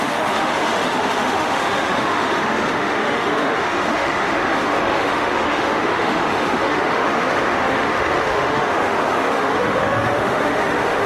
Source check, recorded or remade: remade